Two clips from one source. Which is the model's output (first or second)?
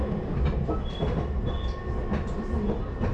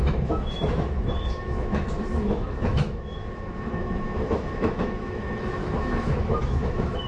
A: second